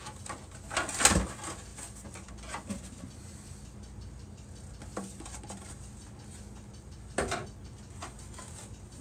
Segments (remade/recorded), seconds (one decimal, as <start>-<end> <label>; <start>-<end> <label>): 0.0-1.7 recorded; 1.7-2.3 remade; 2.3-5.0 recorded; 5.0-5.9 remade; 5.9-9.0 recorded